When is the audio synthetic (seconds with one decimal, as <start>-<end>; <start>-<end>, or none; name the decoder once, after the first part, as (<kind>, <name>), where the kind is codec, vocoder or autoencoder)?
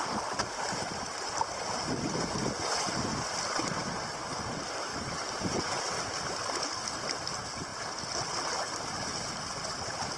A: 4.9-6.7 (vocoder, BigVGAN v2)